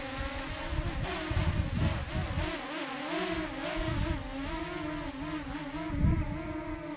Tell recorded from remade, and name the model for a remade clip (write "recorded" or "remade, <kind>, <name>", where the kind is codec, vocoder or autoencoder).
recorded